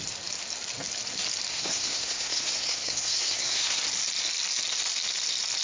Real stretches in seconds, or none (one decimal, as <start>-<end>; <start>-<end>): 0.0-1.5; 3.8-5.6